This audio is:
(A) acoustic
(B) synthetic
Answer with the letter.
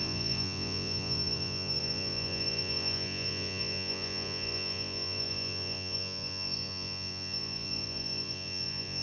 B